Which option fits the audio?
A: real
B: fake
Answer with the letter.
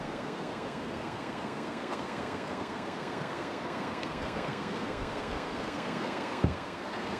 B